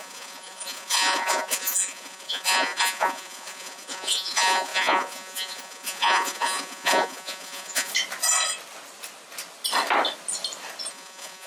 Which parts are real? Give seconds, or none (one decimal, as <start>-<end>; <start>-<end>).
7.9-10.9